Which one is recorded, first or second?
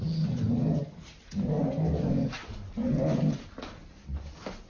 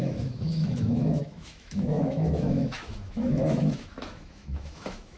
first